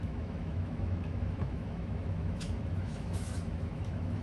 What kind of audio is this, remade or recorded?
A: remade